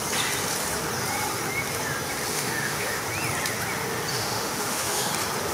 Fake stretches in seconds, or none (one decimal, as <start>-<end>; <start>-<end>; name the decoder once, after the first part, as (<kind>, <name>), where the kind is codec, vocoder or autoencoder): 2.3-3.0 (autoencoder, DAC-VAE); 4.1-5.1